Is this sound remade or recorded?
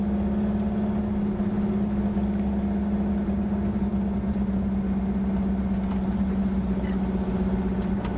recorded